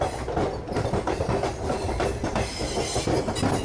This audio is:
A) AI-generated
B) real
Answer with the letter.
B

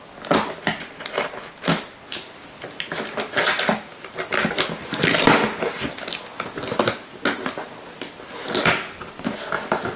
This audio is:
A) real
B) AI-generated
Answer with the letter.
A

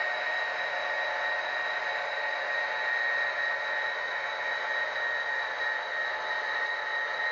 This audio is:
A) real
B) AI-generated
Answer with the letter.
A